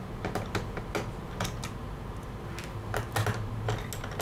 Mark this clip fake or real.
real